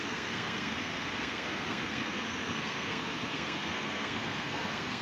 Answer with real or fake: fake